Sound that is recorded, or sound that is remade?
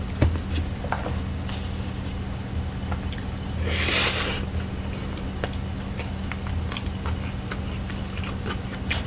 recorded